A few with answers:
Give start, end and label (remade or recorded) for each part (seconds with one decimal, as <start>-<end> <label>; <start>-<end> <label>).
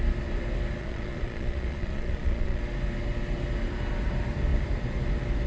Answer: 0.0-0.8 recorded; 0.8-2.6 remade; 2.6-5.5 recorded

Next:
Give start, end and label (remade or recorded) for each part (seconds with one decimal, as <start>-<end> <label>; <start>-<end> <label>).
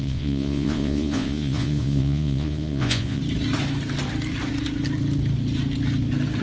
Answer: 0.0-3.2 remade; 3.2-6.4 recorded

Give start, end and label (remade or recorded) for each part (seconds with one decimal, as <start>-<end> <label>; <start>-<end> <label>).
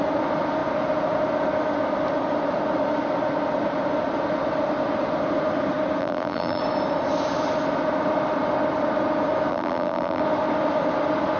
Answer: 0.0-6.0 recorded; 6.0-6.6 remade; 6.6-9.5 recorded; 9.5-10.2 remade; 10.2-11.4 recorded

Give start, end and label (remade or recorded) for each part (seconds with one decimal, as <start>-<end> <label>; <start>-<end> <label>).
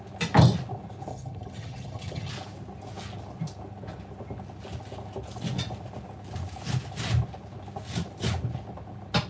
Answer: 0.0-1.1 recorded; 1.1-2.3 remade; 2.3-9.3 recorded